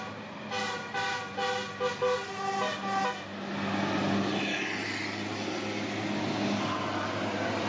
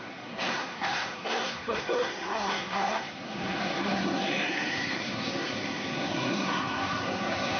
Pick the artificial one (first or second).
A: second